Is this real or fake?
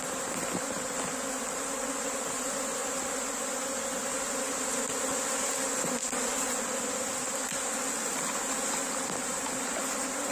real